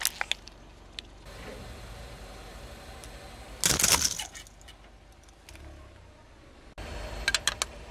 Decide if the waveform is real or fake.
real